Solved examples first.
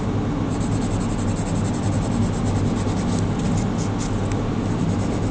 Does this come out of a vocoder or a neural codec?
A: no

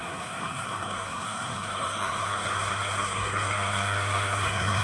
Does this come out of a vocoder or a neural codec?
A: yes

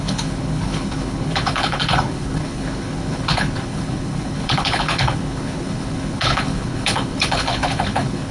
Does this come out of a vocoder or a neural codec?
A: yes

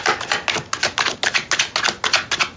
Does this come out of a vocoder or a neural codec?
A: no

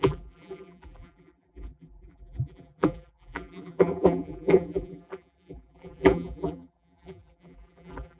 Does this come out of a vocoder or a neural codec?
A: yes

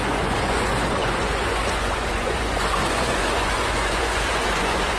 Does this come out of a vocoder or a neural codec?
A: yes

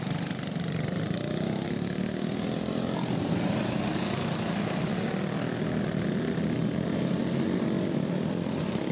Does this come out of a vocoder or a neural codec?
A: no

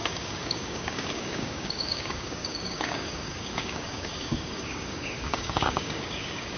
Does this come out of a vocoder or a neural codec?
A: yes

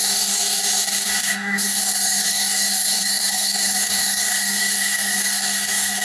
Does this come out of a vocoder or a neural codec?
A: yes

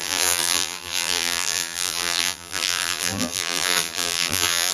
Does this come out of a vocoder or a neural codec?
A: yes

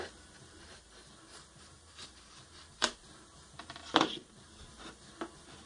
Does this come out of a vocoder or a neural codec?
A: yes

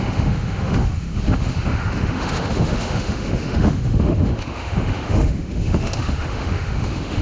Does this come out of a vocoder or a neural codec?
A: yes